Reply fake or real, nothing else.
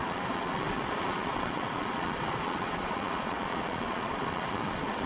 fake